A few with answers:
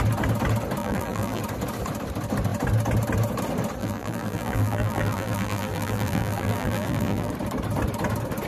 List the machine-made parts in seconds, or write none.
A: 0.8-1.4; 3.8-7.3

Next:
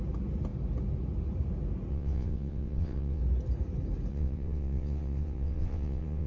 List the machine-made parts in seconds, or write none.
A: 1.9-3.2; 4.1-6.3